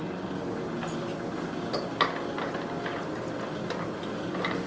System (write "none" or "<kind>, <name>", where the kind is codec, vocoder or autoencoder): none